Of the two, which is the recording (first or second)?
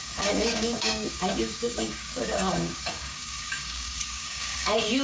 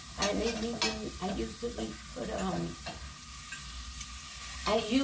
second